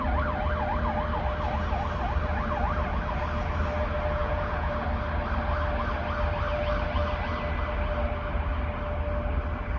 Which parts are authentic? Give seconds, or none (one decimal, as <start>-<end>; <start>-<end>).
0.0-4.2; 4.7-9.8